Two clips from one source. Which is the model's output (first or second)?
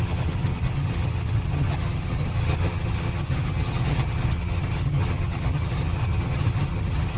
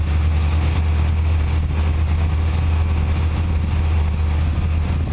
first